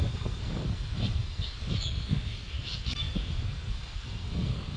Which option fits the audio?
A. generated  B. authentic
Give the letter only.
A